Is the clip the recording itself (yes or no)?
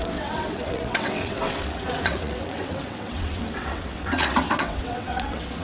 no